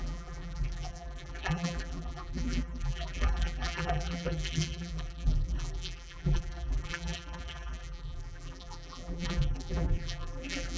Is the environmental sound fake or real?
fake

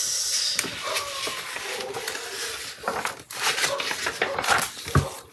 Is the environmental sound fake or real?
real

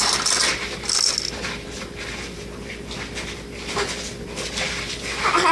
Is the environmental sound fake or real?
real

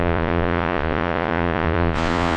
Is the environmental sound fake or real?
fake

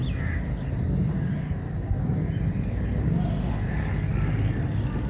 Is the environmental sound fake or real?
real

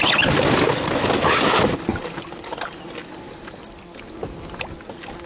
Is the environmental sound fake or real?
real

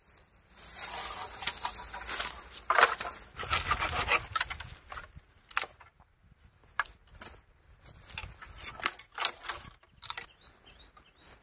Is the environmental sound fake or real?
real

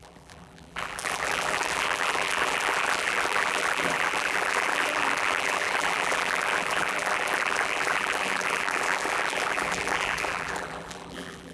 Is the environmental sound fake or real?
fake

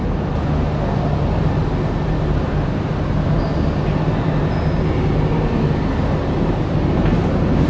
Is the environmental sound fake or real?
real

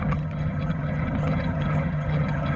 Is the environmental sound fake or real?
fake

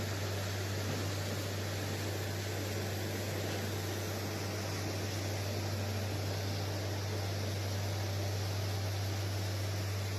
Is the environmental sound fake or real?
real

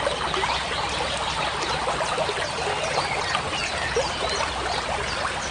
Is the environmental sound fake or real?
real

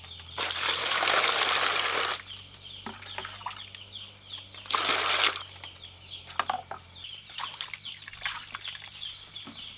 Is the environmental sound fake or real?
real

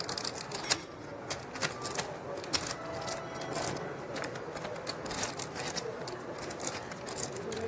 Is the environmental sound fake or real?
real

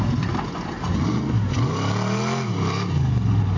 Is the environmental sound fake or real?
real